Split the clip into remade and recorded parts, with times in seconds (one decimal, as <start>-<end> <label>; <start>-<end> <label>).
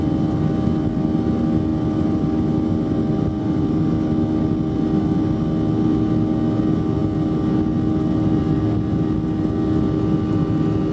0.0-10.9 recorded